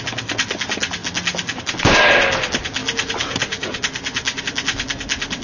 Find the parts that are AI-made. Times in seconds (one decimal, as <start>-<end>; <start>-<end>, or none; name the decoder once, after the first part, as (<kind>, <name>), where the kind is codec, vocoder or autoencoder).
none